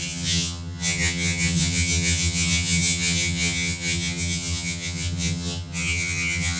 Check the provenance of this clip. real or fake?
fake